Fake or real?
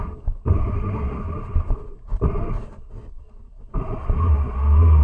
real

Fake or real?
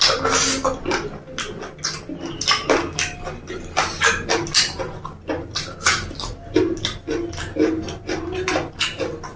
real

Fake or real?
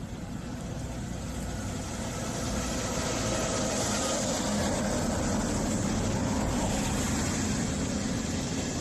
real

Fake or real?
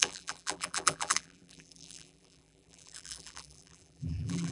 fake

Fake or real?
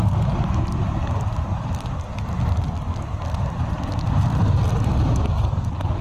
real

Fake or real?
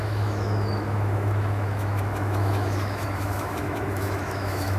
fake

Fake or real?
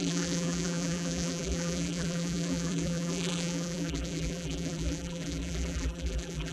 fake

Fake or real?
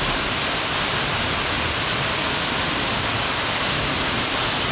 real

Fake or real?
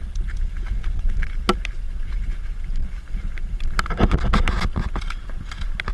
real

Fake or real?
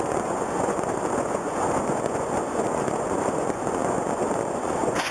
fake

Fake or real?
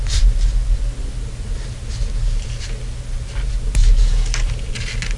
real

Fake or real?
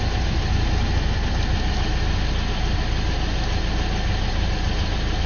real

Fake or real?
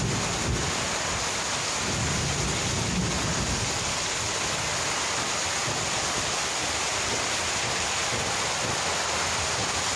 real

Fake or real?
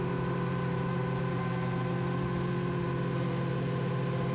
real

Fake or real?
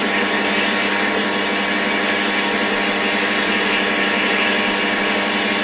real